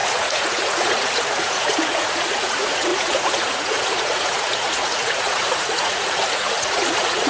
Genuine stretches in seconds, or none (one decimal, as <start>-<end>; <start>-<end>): none

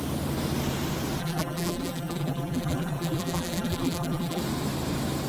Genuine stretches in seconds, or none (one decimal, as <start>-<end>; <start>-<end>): 0.0-1.2; 4.4-5.3

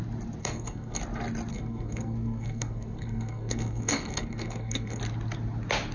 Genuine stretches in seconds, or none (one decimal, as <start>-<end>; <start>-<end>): 0.0-0.4; 1.0-1.5; 5.0-5.9

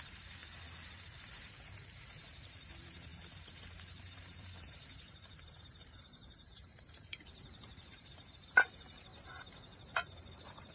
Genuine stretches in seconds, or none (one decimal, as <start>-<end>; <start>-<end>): 0.4-1.0

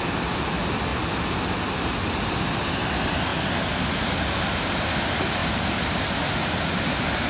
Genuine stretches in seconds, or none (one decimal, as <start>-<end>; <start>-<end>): 0.0-7.3

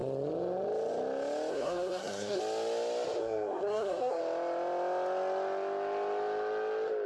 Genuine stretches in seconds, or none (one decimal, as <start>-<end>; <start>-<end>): 0.0-1.5; 2.4-3.2; 4.2-7.1